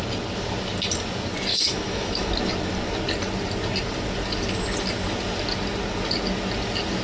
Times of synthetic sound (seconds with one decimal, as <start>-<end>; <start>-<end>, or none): 1.5-2.3